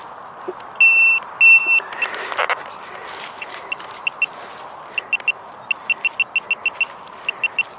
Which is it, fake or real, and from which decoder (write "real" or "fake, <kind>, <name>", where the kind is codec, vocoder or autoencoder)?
real